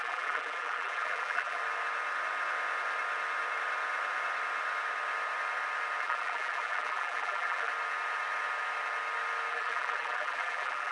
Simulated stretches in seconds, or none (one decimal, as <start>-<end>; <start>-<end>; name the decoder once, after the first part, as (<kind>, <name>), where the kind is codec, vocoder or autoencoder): 0.0-1.6 (vocoder, BigVGAN v2); 6.0-7.7; 9.5-10.9